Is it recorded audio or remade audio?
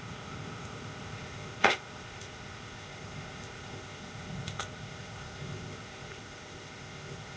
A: remade